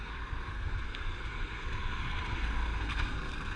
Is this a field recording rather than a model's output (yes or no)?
no